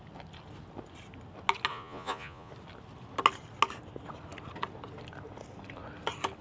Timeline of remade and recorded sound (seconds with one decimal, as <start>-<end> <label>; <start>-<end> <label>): 0.0-1.7 recorded; 1.7-2.5 remade; 2.5-6.4 recorded